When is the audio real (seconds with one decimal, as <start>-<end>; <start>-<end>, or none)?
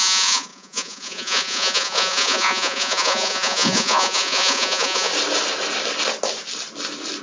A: 5.1-7.2